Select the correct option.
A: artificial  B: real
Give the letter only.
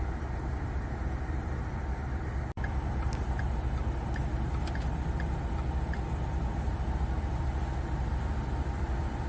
B